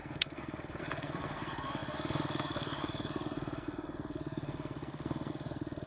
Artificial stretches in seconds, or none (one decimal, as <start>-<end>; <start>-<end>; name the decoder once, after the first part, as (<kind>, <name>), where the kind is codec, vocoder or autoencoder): 0.0-5.9 (codec, SNAC)